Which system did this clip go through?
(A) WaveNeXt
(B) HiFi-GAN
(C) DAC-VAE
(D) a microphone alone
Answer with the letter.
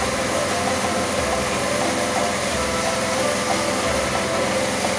D